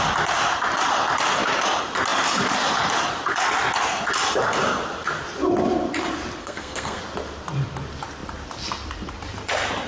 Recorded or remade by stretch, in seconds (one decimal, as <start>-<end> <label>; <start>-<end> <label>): 0.0-6.4 recorded; 6.4-7.0 remade; 7.0-9.9 recorded